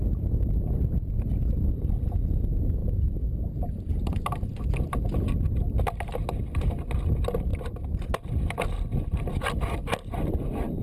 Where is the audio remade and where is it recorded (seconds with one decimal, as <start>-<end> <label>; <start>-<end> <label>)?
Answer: 0.0-2.8 recorded; 2.8-5.8 remade; 5.8-7.5 recorded; 7.5-8.2 remade; 8.2-10.8 recorded